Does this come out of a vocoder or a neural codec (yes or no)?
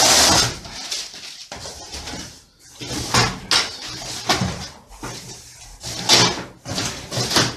no